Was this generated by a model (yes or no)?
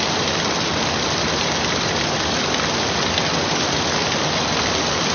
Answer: no